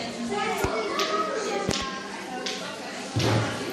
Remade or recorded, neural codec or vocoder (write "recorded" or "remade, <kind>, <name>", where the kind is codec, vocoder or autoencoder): recorded